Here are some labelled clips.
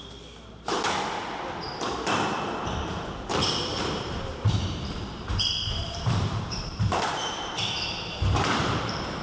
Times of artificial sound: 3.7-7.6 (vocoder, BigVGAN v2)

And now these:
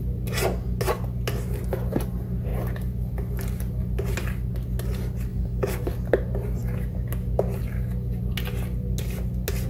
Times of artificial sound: 5.3-5.9 (codec, DAC)

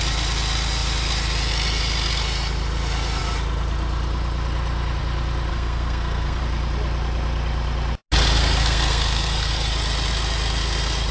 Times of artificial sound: 5.5-6.4 (codec, SNAC); 8.4-9.7

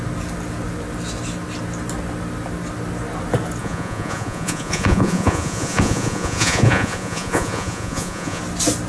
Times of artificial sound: 3.6-8.4 (vocoder, Vocos)

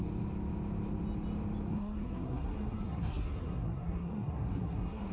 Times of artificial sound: 1.7-5.1 (codec, SNAC)

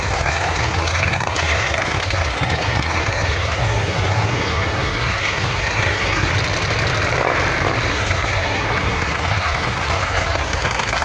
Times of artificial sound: 0.0-6.3 (codec, SNAC); 7.9-11.0

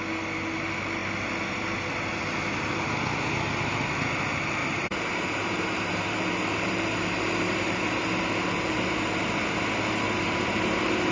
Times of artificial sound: 4.6-9.0 (vocoder, BigVGAN v2)